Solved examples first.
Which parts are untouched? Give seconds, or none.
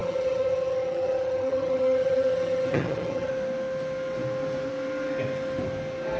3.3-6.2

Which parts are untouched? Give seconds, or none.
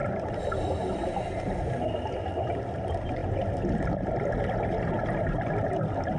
0.0-6.2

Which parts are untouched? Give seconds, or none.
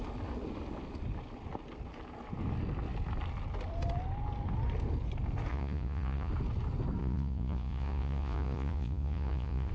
0.0-5.5; 6.3-7.0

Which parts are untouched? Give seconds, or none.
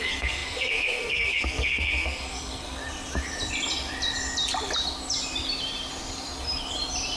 2.8-7.2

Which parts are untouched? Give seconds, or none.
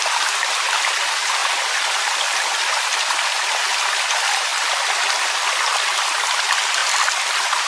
0.0-7.7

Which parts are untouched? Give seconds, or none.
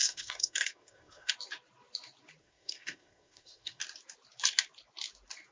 1.3-2.4; 3.8-5.5